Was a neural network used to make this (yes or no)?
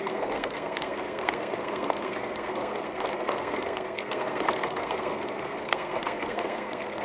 yes